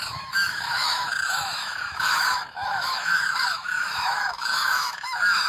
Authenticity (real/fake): fake